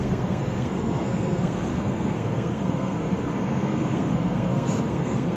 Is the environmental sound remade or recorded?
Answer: remade